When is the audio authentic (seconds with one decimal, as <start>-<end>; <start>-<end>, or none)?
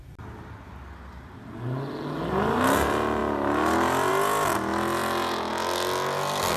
0.0-6.6